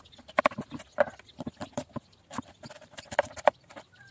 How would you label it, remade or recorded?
remade